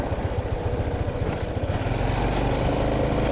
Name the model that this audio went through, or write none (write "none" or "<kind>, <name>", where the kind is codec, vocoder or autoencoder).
none